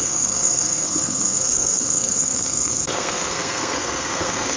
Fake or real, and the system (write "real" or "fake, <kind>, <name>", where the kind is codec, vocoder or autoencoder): fake, codec, SNAC